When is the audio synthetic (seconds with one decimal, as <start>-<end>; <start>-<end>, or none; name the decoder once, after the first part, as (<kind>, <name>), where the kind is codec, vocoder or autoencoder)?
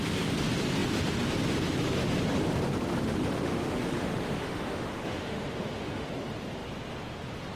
2.8-6.1 (autoencoder, DAC-VAE)